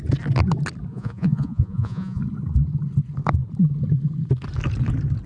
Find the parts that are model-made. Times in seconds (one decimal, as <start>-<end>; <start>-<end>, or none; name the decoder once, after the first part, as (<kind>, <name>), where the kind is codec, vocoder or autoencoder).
0.9-2.2 (vocoder, Vocos)